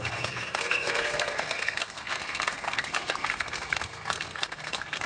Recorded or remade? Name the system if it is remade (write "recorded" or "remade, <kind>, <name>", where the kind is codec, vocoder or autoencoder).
remade, codec, SNAC